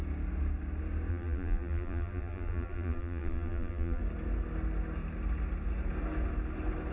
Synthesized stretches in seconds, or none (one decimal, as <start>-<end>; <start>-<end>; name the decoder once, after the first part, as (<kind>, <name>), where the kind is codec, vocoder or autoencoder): 1.1-4.0 (vocoder, BigVGAN v2)